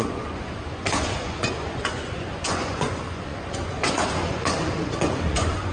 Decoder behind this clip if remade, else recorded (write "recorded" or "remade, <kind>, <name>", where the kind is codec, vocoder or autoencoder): remade, vocoder, Vocos